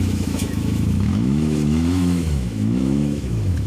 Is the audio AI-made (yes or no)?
yes